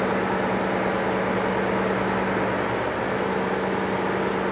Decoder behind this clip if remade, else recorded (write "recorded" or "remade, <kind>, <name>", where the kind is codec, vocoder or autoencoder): recorded